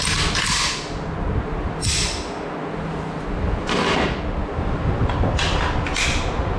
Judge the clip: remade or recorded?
recorded